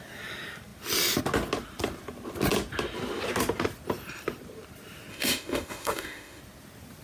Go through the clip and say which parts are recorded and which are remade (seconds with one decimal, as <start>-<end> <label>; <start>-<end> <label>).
0.0-5.1 recorded; 5.1-6.4 remade; 6.4-7.0 recorded